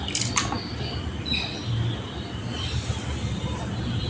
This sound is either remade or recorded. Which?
recorded